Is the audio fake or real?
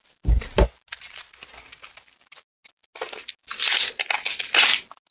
real